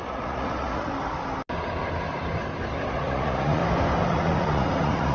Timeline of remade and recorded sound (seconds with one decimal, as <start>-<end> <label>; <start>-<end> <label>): 0.0-0.9 remade; 0.9-2.9 recorded; 2.9-3.6 remade; 3.6-4.1 recorded; 4.1-5.1 remade